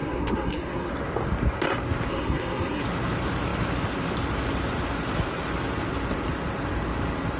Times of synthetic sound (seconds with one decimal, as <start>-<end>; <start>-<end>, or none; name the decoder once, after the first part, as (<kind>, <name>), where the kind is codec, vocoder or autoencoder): 0.0-0.9 (codec, SNAC); 2.1-2.8